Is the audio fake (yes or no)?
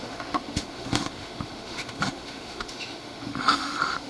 yes